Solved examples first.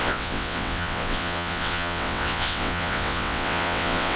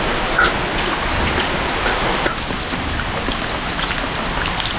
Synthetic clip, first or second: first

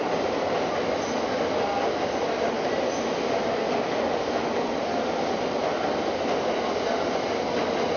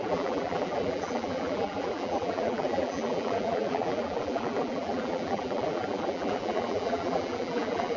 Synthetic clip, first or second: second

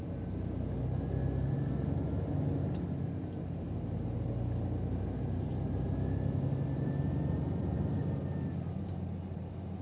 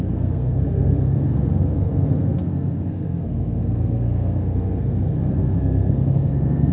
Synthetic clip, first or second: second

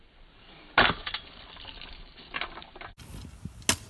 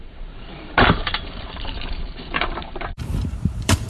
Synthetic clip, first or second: second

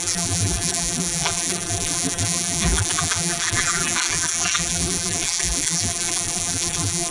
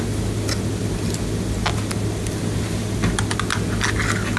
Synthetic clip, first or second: first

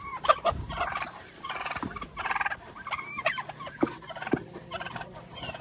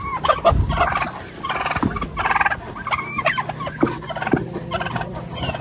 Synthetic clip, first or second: first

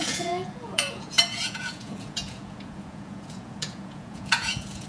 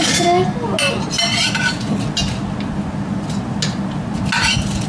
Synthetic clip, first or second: first